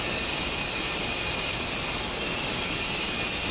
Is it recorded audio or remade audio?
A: recorded